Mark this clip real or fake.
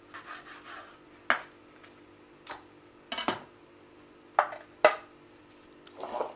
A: real